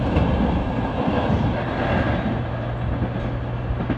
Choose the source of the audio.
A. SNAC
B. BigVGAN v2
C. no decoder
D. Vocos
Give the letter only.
C